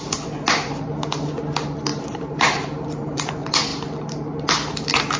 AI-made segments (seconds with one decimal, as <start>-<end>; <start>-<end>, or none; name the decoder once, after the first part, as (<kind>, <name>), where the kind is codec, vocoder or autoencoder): 1.9-3.3 (vocoder, BigVGAN v2)

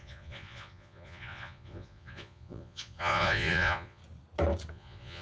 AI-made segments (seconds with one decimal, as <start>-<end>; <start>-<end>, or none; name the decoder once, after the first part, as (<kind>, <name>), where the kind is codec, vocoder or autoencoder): 0.0-4.0 (vocoder, Vocos); 4.7-5.2

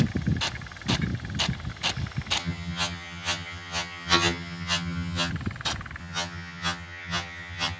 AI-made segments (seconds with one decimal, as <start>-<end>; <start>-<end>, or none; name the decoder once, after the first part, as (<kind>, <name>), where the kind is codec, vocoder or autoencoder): 2.4-5.3 (vocoder, HiFi-GAN); 6.0-7.8

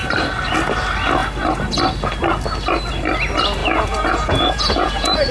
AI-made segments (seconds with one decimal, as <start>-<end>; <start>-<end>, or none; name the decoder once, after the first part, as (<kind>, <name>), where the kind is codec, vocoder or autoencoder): 3.6-5.3 (vocoder, Vocos)

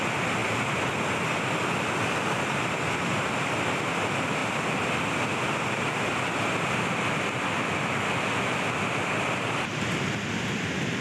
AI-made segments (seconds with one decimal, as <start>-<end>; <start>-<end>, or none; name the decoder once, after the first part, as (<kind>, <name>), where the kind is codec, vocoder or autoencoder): none

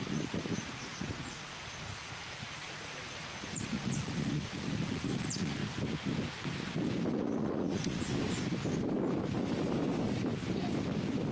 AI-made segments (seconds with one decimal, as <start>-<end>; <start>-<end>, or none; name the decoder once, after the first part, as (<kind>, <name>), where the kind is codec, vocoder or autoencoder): 0.0-5.6 (vocoder, Vocos); 7.1-8.1

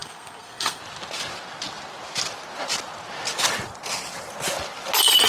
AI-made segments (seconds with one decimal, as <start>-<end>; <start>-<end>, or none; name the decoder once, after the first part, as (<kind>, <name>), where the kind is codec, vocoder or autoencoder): 0.0-0.8 (codec, SNAC)